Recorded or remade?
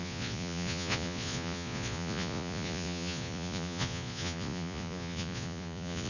remade